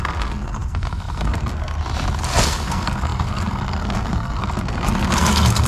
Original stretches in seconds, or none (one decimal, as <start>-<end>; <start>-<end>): 1.8-2.4